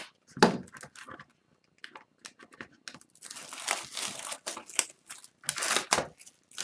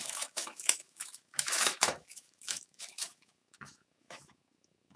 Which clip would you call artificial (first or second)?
second